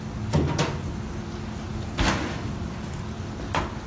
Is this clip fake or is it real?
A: real